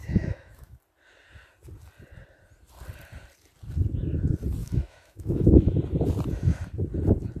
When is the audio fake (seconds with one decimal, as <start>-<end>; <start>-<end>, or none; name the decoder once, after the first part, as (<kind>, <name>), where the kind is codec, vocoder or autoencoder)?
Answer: 0.0-0.8 (autoencoder, DAC-VAE); 4.6-5.8